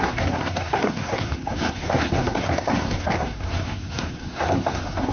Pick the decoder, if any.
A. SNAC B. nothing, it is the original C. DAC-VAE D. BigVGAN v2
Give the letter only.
A